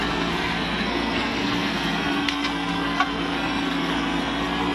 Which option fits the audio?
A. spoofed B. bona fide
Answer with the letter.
A